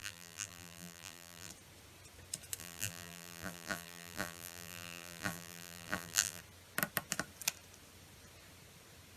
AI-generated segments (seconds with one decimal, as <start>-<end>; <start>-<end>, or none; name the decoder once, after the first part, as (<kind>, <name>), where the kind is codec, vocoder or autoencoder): 0.0-1.5 (vocoder, BigVGAN v2); 2.6-6.4